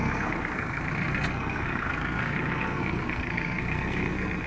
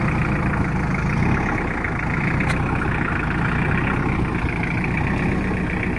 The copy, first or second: first